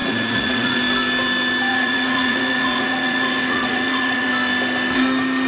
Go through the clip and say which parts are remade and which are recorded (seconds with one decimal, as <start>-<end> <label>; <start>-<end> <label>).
0.0-0.8 remade; 0.8-1.7 recorded; 1.7-4.3 remade; 4.3-5.5 recorded